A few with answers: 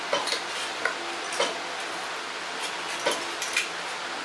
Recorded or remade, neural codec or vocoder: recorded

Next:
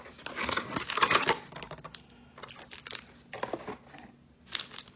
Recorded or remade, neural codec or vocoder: recorded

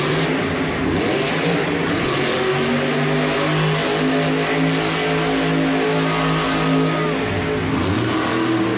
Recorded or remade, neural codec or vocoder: recorded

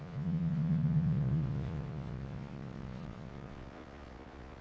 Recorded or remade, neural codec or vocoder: remade, vocoder, Vocos